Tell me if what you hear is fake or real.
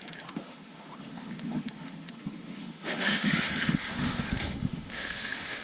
fake